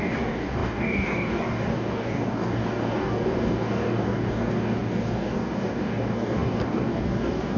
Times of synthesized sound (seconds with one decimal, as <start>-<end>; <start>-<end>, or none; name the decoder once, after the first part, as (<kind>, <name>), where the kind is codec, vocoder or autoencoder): 0.0-7.6 (codec, DAC)